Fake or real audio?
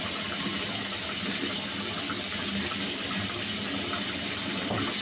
real